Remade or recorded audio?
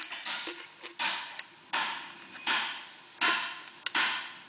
recorded